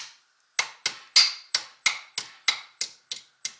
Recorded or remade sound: recorded